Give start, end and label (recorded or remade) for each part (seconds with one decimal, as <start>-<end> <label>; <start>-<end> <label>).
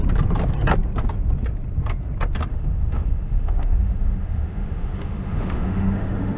0.0-2.5 recorded; 2.5-6.4 remade